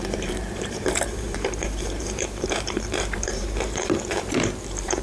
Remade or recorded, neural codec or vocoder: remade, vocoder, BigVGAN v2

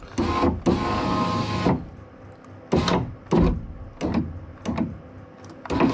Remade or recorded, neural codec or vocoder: recorded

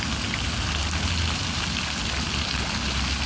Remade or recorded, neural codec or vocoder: recorded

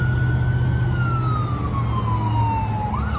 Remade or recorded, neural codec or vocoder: recorded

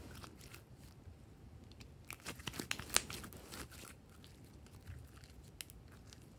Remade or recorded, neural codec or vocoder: recorded